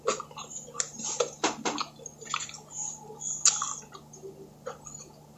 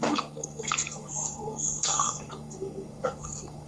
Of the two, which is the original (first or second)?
first